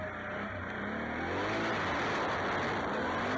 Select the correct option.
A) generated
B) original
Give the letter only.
B